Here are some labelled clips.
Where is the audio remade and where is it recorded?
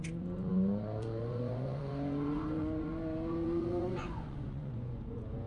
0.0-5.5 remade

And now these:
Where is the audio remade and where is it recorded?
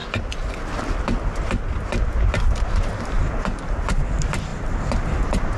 0.0-5.6 recorded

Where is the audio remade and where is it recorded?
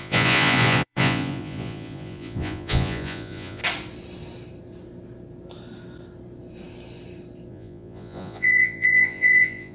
0.0-3.6 remade; 3.6-7.5 recorded; 7.5-9.7 remade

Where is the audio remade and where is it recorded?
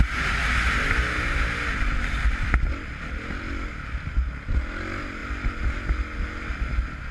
0.0-7.1 recorded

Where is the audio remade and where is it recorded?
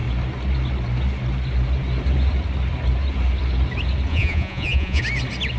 0.0-4.1 recorded; 4.1-5.0 remade; 5.0-5.6 recorded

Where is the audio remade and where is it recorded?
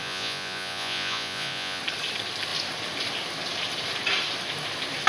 0.0-1.8 remade; 1.8-5.1 recorded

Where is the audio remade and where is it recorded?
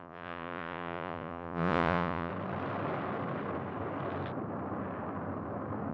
0.0-2.3 remade; 2.3-5.9 recorded